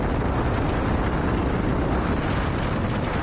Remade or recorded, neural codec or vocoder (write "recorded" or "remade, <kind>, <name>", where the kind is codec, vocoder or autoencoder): recorded